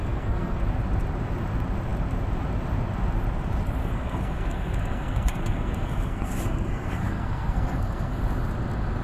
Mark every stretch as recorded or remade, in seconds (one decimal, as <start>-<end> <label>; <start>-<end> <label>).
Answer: 0.0-0.6 remade; 0.6-3.8 recorded; 3.8-8.2 remade; 8.2-9.0 recorded